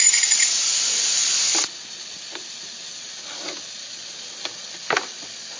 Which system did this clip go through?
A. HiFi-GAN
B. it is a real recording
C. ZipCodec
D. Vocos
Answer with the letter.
B